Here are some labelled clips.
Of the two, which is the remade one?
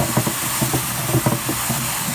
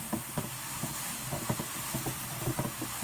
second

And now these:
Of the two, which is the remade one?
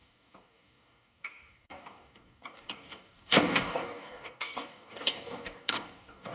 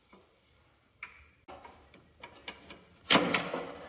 first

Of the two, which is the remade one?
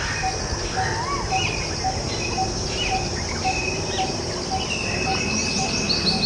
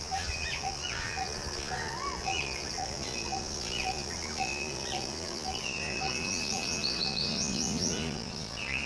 second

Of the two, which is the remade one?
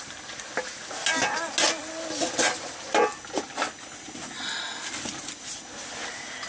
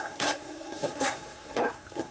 second